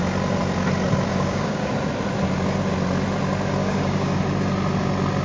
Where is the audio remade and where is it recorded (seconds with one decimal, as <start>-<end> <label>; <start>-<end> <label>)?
0.0-1.1 recorded; 1.1-1.7 remade; 1.7-3.6 recorded; 3.6-4.2 remade; 4.2-5.2 recorded